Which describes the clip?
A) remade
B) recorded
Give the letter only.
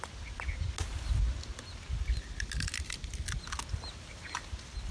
B